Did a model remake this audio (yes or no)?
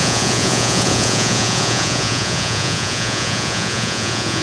yes